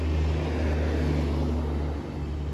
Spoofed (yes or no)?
no